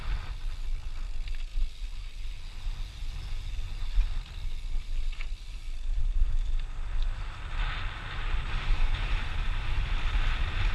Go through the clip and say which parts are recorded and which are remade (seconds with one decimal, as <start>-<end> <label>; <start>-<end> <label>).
0.0-10.7 recorded